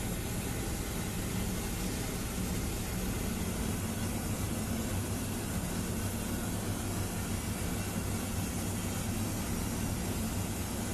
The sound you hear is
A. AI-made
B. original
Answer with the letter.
B